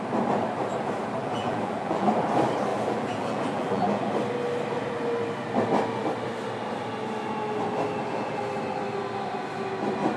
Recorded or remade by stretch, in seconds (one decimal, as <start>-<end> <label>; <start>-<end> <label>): 0.0-1.2 recorded; 1.2-2.1 remade; 2.1-2.7 recorded; 2.7-4.1 remade; 4.1-10.2 recorded